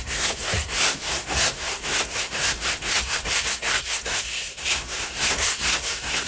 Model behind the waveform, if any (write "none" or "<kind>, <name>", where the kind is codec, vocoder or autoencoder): codec, SNAC